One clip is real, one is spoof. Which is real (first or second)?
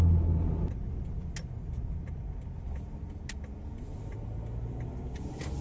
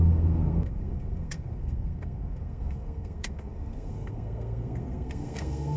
first